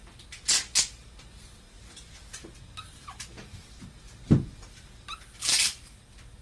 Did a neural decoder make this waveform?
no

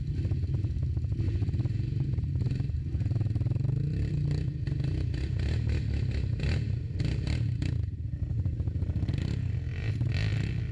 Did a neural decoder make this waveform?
no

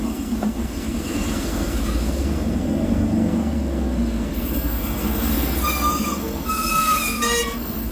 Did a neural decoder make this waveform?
yes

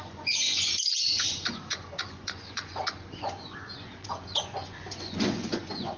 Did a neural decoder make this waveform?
yes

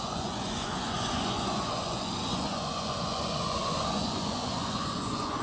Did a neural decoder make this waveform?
yes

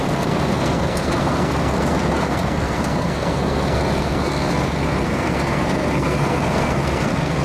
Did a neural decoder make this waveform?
yes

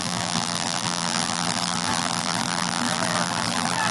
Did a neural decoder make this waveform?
yes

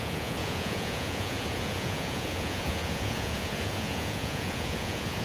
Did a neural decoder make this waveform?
yes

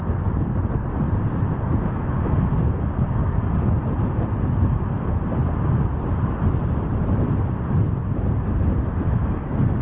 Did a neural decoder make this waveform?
no